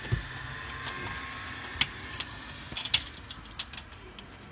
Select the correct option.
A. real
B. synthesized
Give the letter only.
A